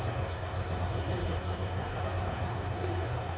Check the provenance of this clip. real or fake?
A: fake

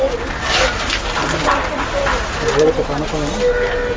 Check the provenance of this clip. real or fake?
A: real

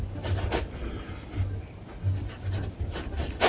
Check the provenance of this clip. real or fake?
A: real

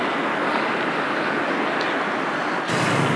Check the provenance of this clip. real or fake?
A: real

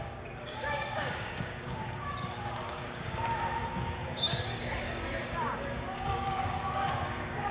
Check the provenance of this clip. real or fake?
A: fake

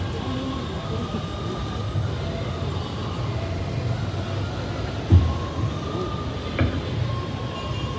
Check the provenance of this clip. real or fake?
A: real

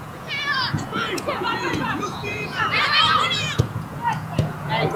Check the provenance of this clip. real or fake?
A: fake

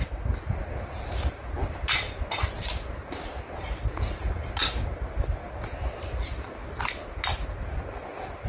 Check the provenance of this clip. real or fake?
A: real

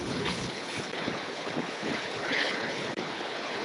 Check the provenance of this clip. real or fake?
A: fake